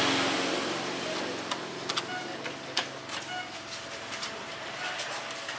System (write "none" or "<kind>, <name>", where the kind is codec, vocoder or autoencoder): none